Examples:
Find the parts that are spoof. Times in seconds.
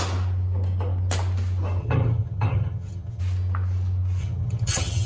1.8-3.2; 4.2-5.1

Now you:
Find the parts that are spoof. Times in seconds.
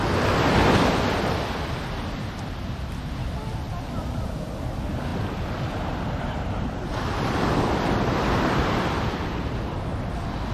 none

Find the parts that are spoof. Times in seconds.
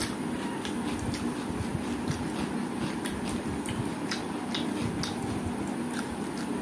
none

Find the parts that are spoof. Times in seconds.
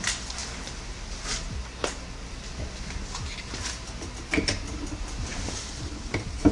none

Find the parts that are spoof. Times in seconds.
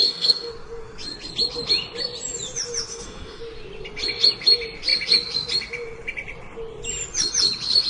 0.0-0.5; 2.9-3.4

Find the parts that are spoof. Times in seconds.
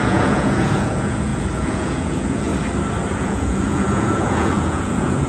0.0-2.5; 3.1-5.3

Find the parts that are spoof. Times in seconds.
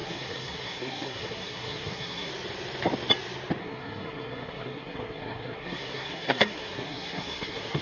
0.0-2.3; 3.6-7.8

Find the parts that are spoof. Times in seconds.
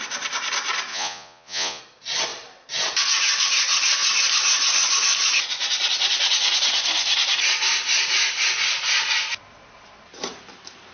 0.9-1.8